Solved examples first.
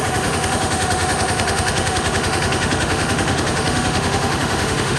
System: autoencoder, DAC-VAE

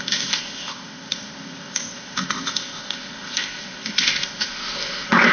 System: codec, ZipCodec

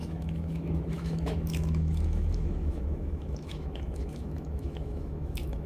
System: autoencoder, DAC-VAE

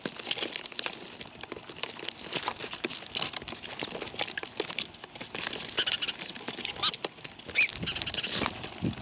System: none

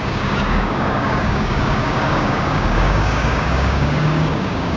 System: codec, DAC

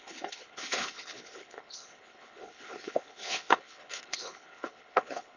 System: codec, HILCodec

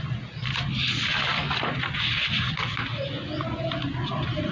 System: none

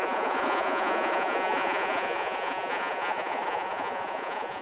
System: vocoder, Vocos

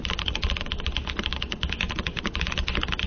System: none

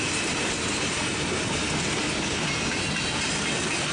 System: none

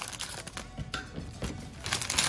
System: none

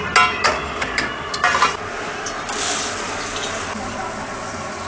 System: none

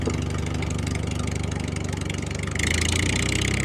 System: none